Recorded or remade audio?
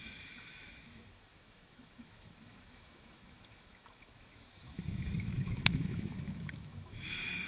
remade